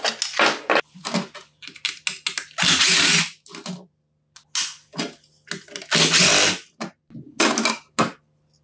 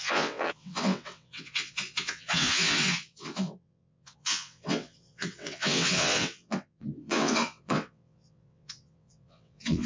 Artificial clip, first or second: second